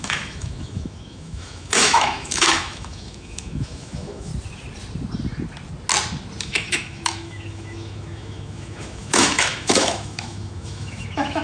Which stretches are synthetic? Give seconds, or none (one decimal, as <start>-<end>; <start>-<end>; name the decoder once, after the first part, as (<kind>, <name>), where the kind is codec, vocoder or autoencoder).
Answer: 0.0-4.3 (autoencoder, DAC-VAE); 6.4-11.4